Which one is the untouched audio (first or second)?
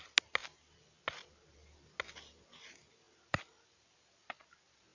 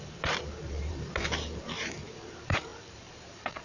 first